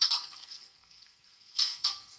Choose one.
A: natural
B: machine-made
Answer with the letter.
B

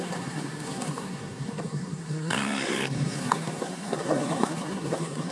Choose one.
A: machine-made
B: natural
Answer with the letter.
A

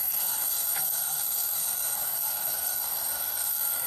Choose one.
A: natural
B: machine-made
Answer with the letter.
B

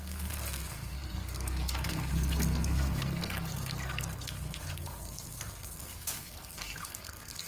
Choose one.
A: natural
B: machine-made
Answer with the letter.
B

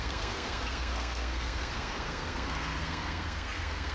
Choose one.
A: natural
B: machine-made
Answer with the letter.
B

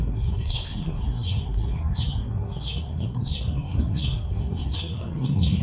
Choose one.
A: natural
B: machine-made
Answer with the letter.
B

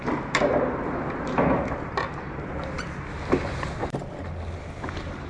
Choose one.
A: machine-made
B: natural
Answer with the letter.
B